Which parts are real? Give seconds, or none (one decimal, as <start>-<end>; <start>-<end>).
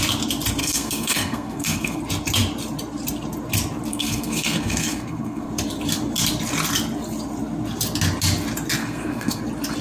0.0-0.6; 2.0-3.9; 5.5-8.8; 9.4-9.8